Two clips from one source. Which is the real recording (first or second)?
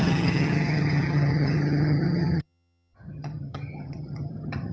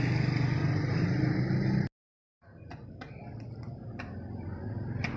second